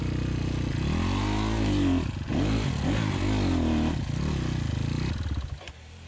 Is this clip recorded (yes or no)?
yes